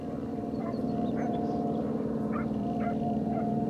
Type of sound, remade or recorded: remade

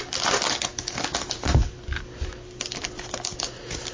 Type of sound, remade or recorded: recorded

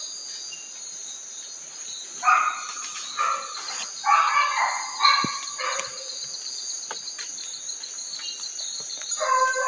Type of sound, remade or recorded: recorded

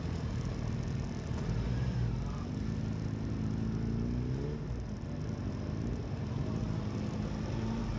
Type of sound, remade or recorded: recorded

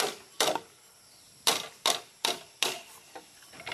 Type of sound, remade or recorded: recorded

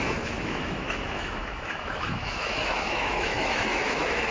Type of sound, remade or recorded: remade